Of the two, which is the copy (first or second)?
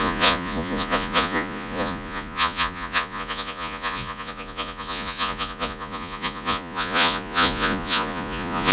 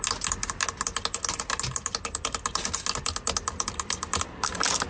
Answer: first